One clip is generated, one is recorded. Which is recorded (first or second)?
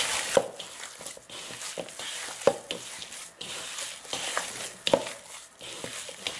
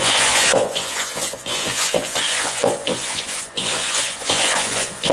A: first